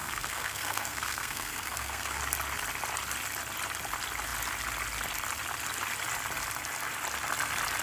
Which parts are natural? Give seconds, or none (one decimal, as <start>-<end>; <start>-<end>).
2.2-7.8